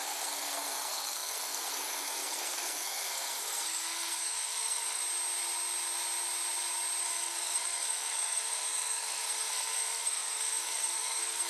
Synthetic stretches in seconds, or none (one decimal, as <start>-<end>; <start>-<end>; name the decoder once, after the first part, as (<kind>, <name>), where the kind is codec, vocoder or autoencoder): 0.0-5.0 (codec, SNAC); 7.0-11.5